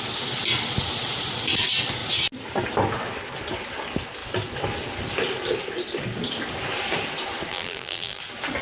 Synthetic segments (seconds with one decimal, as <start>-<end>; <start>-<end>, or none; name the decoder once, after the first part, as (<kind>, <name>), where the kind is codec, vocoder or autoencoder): 7.5-8.2 (vocoder, BigVGAN v2)